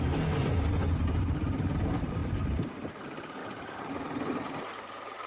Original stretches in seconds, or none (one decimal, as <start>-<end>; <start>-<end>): 0.4-1.0; 2.2-3.0; 3.4-4.6

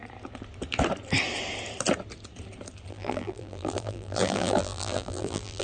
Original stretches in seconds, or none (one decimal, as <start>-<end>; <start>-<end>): 0.0-2.9

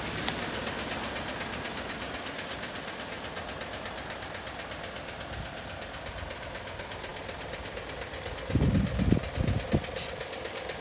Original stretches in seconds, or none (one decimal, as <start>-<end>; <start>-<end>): 0.0-10.8